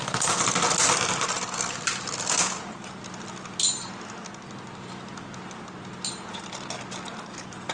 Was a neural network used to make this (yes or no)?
no